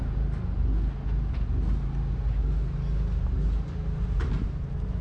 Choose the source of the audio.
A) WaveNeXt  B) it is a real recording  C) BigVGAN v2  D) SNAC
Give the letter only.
B